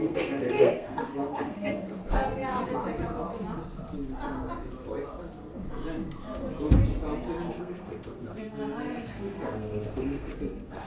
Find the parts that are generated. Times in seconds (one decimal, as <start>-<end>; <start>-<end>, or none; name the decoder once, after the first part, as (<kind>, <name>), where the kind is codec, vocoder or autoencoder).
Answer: 0.0-2.7 (codec, SNAC); 7.5-10.9